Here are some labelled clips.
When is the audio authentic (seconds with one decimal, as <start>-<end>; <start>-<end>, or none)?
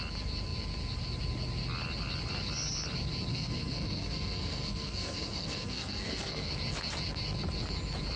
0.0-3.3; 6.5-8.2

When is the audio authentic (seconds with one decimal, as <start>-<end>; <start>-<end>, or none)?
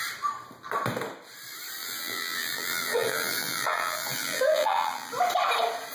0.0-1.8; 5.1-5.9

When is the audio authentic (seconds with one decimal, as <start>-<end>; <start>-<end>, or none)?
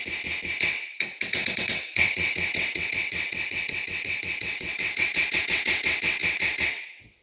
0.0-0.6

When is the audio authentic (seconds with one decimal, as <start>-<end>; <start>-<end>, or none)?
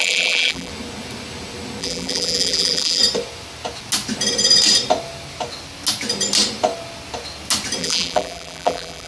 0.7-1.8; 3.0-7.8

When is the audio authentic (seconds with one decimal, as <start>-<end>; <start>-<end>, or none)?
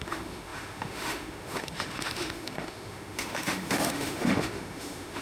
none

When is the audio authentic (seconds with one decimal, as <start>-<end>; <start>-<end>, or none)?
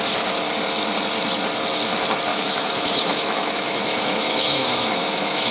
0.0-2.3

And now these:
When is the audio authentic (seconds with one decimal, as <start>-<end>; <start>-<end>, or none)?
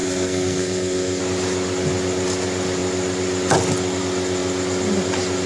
1.2-5.5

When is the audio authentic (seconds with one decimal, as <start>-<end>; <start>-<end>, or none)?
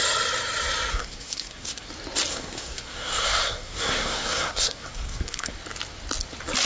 0.0-0.9; 1.9-2.3; 5.6-6.7